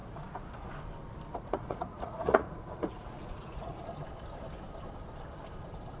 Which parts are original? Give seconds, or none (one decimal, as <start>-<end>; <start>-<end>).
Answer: 0.7-1.3; 3.8-6.0